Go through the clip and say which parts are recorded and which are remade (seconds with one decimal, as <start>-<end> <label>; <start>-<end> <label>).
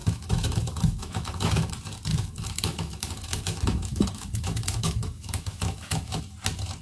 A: 0.0-1.7 remade; 1.7-2.1 recorded; 2.1-6.2 remade; 6.2-6.8 recorded